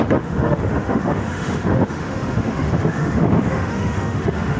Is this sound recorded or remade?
remade